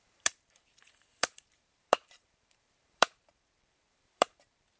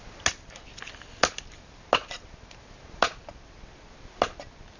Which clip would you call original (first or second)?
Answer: second